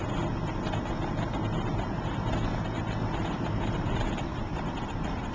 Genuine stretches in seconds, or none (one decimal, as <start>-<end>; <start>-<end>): 0.0-3.2